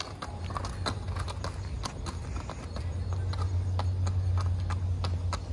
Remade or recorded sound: recorded